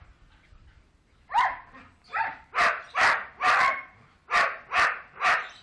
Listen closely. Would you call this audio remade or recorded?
recorded